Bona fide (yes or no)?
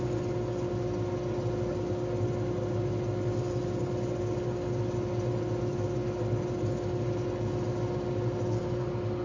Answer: yes